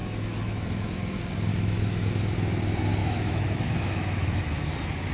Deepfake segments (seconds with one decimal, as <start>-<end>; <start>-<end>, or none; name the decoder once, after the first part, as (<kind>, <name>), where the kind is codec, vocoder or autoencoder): 0.0-1.1 (autoencoder, DAC-VAE); 1.5-2.2; 3.0-4.4